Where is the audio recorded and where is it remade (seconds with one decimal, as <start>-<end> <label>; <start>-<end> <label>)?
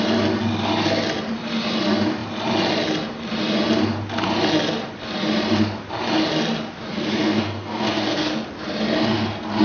0.0-6.9 recorded; 6.9-8.3 remade; 8.3-9.6 recorded